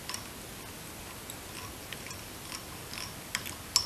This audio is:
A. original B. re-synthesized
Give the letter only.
A